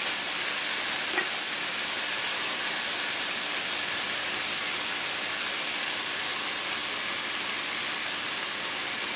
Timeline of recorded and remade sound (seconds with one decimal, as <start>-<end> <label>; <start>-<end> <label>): 0.0-9.2 recorded